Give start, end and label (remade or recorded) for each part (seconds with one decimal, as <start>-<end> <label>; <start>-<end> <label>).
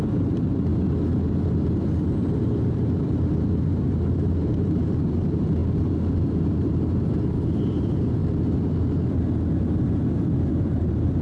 0.0-0.7 remade; 0.7-2.2 recorded; 2.2-5.6 remade; 5.6-6.4 recorded; 6.4-8.2 remade; 8.2-10.5 recorded; 10.5-11.2 remade